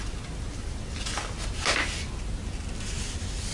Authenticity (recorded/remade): recorded